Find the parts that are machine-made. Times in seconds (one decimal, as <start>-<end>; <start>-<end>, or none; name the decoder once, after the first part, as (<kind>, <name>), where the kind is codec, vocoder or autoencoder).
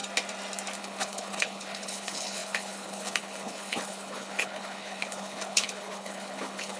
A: 0.8-6.8 (codec, HILCodec)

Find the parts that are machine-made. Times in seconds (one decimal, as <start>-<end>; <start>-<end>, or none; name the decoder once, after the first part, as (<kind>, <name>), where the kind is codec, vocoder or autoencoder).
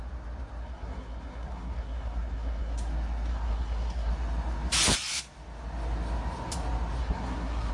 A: 0.6-2.9 (codec, SNAC); 3.3-4.1; 7.0-7.7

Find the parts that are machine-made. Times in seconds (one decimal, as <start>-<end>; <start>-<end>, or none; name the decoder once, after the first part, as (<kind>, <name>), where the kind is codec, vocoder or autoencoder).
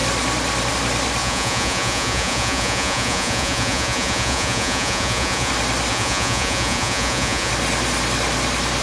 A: 1.2-5.5 (vocoder, Vocos); 5.9-7.5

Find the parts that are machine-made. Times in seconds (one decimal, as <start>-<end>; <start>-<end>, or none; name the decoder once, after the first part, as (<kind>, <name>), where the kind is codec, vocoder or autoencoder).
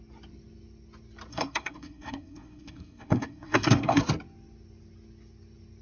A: 1.3-4.0 (codec, SNAC)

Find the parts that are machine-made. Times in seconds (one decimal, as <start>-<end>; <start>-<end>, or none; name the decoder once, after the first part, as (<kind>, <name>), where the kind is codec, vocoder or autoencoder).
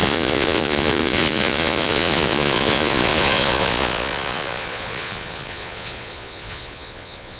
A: 0.0-7.4 (vocoder, Vocos)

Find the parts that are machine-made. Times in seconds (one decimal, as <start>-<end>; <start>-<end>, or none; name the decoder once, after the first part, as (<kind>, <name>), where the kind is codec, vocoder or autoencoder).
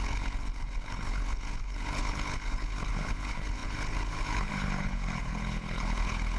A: 0.0-6.4 (codec, HILCodec)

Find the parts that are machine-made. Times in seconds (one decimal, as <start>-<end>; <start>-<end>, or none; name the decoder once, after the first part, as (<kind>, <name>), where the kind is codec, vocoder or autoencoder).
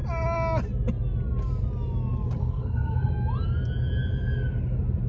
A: 2.4-3.1 (codec, SNAC)